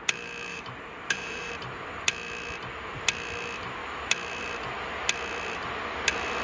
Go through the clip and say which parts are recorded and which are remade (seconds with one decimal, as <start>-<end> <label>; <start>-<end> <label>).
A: 0.0-0.5 recorded; 0.5-1.5 remade; 1.5-6.4 recorded